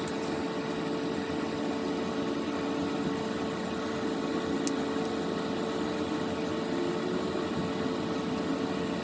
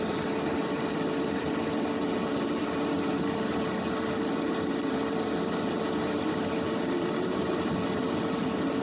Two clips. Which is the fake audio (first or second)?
second